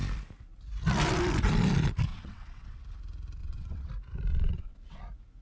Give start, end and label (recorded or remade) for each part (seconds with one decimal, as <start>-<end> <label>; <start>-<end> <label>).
0.0-2.1 recorded; 2.1-2.8 remade; 2.8-3.4 recorded; 3.4-3.9 remade; 3.9-4.3 recorded; 4.3-5.0 remade; 5.0-5.4 recorded